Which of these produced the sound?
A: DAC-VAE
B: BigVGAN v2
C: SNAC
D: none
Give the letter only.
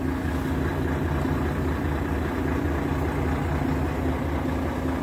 D